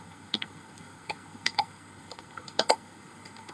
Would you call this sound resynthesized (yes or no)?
yes